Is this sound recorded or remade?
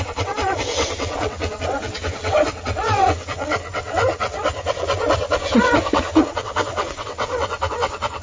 remade